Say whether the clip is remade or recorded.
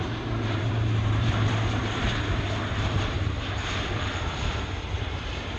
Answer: remade